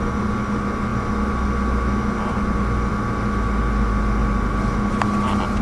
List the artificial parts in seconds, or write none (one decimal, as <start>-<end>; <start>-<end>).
none